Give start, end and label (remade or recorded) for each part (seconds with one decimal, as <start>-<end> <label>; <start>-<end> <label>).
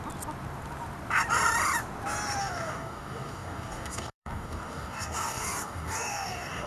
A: 0.0-2.4 recorded; 2.4-6.7 remade